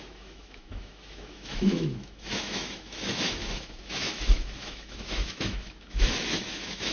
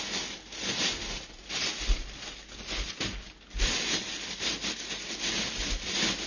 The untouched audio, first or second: second